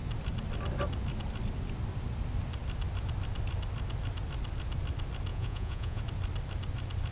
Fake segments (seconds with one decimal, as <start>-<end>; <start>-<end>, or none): 5.3-6.0